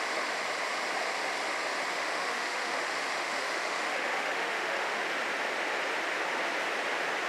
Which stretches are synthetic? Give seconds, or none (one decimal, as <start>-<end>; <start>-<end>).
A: 1.9-2.8; 3.2-5.0